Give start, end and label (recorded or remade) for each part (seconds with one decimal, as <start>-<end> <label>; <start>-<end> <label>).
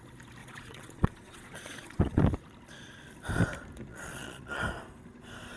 0.0-0.4 recorded; 0.4-2.2 remade; 2.2-3.9 recorded; 3.9-4.6 remade; 4.6-5.6 recorded